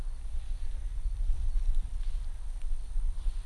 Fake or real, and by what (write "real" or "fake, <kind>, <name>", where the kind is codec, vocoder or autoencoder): real